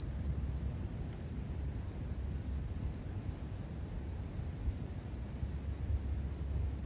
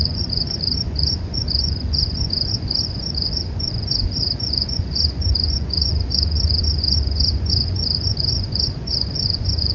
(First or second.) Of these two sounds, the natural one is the first